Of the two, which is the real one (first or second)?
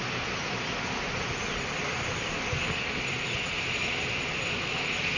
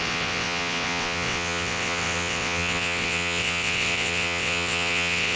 first